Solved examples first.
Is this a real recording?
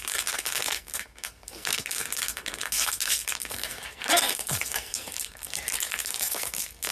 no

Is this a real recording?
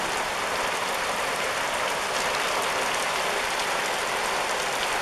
yes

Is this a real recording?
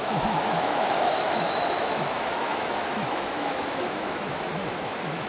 no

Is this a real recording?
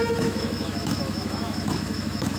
no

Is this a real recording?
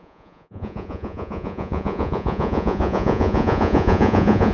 no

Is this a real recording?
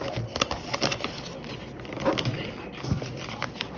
no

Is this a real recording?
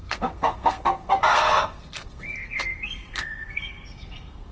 no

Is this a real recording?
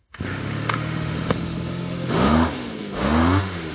no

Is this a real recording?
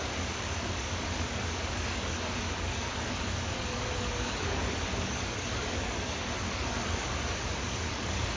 no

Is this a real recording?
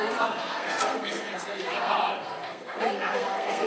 no